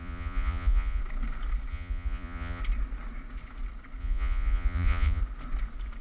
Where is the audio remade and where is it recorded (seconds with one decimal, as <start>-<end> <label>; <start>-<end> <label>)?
0.0-1.0 remade; 1.0-1.7 recorded; 1.7-2.6 remade; 2.6-4.0 recorded; 4.0-5.2 remade; 5.2-6.0 recorded